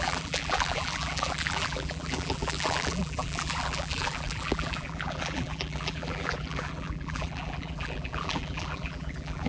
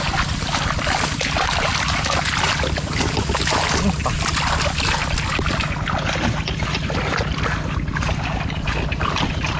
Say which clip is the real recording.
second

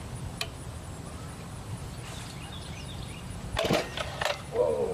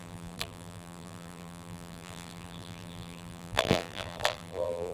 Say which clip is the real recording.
first